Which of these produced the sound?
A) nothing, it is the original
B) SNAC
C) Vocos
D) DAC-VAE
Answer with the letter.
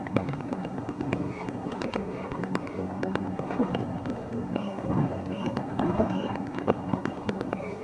B